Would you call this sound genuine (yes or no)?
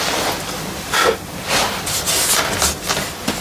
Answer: yes